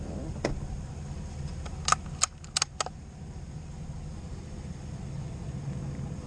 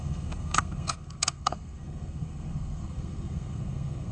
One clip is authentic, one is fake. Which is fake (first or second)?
second